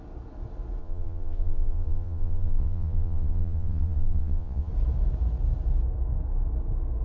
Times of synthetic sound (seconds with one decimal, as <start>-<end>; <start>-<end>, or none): 0.8-4.7